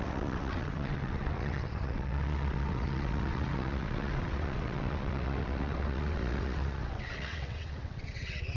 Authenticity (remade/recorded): remade